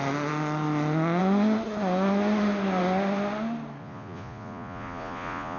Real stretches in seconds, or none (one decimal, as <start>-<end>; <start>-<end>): 0.0-3.8